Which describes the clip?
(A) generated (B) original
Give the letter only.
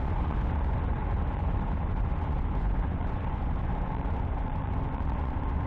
A